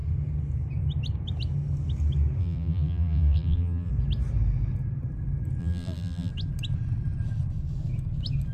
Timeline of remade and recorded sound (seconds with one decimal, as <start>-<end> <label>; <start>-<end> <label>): 0.0-2.4 recorded; 2.4-3.9 remade; 3.9-5.6 recorded; 5.6-6.3 remade; 6.3-8.5 recorded